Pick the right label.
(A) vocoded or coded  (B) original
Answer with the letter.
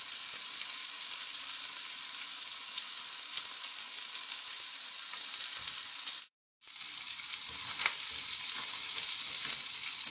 B